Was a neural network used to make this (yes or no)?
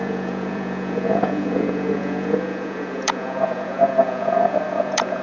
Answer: yes